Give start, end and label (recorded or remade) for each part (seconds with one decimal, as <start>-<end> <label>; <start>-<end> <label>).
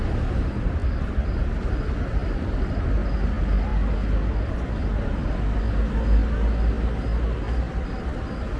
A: 0.0-8.6 recorded